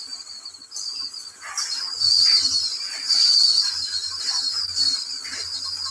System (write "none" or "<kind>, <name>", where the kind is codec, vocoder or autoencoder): none